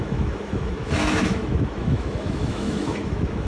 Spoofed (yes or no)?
yes